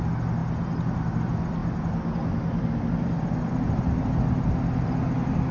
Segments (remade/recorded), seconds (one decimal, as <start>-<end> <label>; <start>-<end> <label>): 0.0-5.5 recorded